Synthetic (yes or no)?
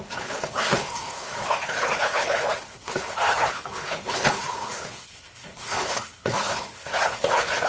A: yes